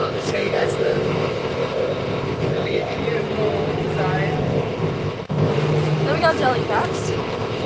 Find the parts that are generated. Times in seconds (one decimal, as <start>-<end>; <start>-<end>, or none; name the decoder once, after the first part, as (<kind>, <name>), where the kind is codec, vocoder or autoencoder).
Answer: 0.0-3.0 (codec, ZipCodec); 4.4-5.5; 6.9-7.7

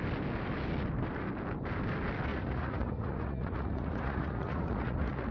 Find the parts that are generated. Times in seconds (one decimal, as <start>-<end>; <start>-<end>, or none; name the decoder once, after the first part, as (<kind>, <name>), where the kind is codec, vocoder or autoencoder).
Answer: 2.3-5.3 (vocoder, Vocos)

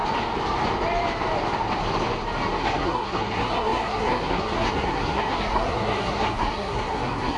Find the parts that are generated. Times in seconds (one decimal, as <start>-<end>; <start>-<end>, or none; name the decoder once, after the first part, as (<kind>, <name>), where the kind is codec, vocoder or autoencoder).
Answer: 2.6-7.4 (codec, SNAC)

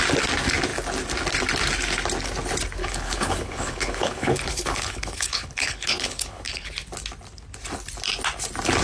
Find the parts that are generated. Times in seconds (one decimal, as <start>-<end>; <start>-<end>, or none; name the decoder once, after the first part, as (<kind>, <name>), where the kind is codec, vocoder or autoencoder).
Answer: 2.8-6.7 (codec, HILCodec)

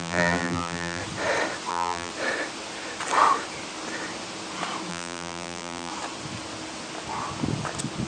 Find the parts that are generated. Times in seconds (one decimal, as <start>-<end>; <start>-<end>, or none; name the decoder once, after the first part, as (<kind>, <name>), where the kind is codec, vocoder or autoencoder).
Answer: 0.0-1.0 (vocoder, BigVGAN v2); 1.7-2.1; 4.9-5.9

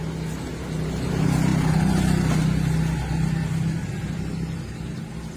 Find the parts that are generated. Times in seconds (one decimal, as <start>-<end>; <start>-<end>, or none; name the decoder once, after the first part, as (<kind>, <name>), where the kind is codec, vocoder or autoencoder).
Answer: none